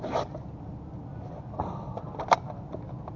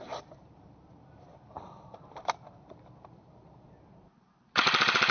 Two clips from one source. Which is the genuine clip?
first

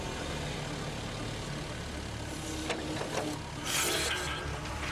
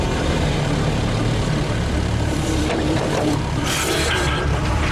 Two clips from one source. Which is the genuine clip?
first